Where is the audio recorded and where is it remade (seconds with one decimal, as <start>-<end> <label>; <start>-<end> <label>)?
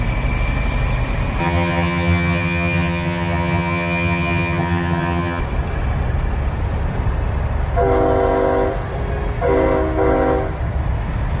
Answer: 0.0-1.4 recorded; 1.4-5.4 remade; 5.4-11.4 recorded